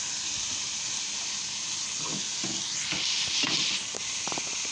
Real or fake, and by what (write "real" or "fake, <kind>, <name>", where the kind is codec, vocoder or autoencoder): real